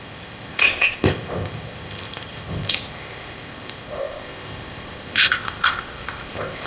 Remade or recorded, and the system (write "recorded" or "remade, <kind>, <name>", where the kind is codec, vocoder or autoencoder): remade, codec, ZipCodec